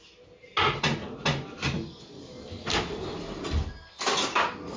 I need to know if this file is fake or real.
real